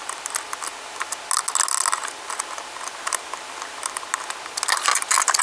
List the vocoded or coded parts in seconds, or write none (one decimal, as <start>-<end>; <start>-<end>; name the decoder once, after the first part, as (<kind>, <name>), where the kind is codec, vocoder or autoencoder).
none

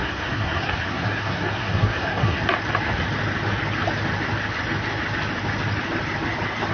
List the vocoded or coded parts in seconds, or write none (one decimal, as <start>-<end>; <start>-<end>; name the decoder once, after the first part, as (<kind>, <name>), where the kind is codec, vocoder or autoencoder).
0.0-2.4 (codec, SNAC)

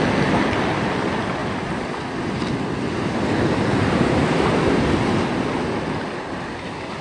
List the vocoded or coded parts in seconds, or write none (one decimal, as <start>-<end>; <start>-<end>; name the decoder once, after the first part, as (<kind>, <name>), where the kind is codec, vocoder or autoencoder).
none

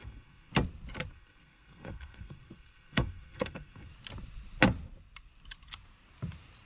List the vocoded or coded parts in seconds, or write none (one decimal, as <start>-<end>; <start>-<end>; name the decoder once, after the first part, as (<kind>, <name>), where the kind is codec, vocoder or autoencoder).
0.0-0.5 (codec, SNAC); 1.1-3.9